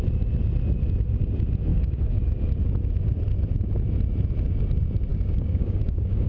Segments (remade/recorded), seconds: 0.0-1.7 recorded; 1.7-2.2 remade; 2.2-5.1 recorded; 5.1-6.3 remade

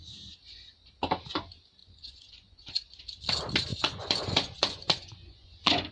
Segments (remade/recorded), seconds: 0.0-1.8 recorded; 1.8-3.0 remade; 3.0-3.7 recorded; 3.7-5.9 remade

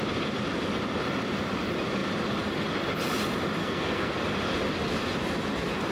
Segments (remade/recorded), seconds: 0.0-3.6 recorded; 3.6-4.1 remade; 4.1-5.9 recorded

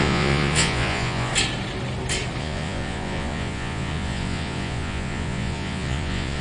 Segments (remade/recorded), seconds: 0.0-1.3 remade; 1.3-2.4 recorded; 2.4-6.4 remade